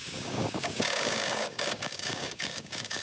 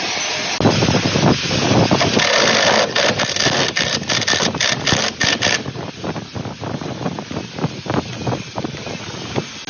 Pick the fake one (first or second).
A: first